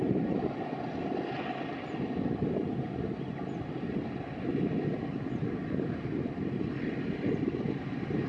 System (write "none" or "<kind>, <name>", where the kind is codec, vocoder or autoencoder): none